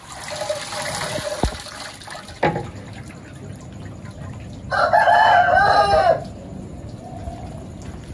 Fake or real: real